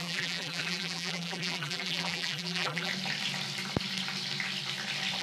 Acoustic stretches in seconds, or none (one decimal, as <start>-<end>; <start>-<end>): 2.9-5.2